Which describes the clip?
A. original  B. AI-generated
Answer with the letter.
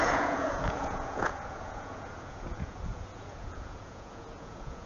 B